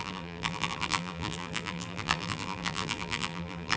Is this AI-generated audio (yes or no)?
yes